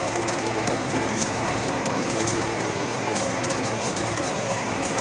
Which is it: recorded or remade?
remade